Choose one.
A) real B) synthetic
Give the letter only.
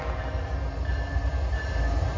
A